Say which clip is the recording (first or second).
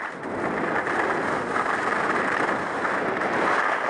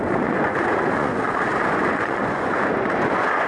first